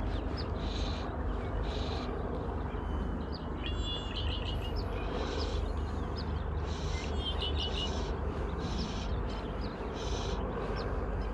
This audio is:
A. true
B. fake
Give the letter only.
A